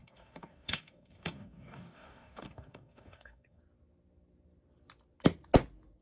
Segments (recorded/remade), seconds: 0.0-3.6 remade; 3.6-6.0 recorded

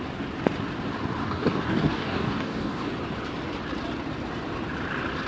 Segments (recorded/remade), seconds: 0.0-1.2 recorded; 1.2-2.9 remade; 2.9-5.3 recorded